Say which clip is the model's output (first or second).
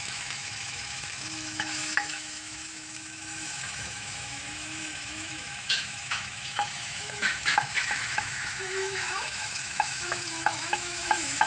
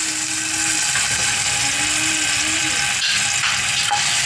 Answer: first